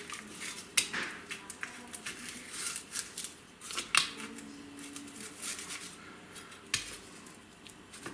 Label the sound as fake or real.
real